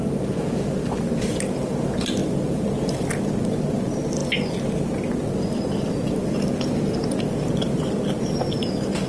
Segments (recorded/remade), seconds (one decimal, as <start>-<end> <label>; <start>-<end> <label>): 0.0-4.2 remade; 4.2-5.3 recorded; 5.3-9.1 remade